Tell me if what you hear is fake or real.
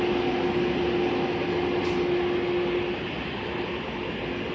real